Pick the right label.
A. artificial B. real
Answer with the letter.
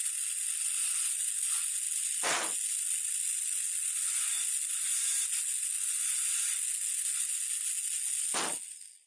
B